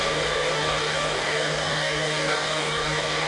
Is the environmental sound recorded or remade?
remade